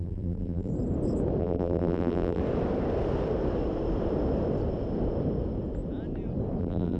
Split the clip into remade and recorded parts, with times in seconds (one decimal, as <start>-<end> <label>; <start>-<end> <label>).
0.0-0.7 remade; 0.7-1.4 recorded; 1.4-2.4 remade; 2.4-6.6 recorded; 6.6-7.0 remade